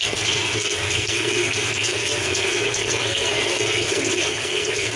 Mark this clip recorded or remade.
remade